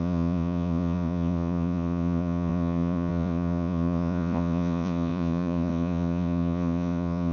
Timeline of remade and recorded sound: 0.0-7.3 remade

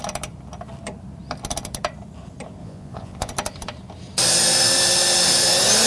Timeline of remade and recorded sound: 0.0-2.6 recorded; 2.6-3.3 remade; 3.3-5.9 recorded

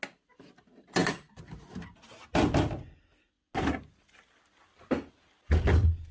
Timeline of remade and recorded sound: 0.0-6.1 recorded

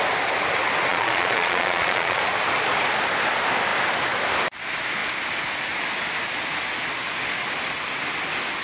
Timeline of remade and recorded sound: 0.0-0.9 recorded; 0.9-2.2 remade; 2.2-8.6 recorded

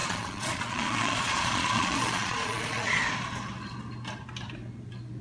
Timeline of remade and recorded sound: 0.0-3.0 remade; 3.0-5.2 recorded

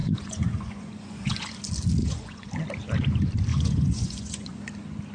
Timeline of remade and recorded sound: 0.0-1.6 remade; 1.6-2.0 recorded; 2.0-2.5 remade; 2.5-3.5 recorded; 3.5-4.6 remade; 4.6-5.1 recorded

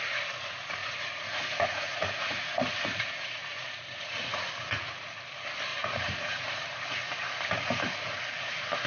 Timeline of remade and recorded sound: 0.0-0.8 recorded; 0.8-5.2 remade; 5.2-5.7 recorded; 5.7-6.4 remade; 6.4-8.9 recorded